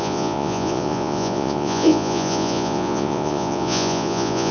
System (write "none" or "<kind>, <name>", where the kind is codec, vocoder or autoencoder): vocoder, Vocos